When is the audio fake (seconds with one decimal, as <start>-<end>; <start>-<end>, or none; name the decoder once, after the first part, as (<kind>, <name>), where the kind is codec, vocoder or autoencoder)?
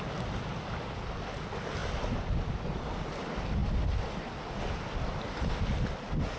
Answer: none